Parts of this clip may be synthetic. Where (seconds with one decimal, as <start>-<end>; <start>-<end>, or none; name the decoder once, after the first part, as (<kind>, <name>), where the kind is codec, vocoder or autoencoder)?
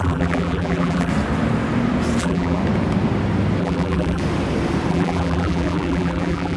0.0-1.1 (vocoder, BigVGAN v2); 2.2-2.6; 3.6-4.2; 4.9-6.6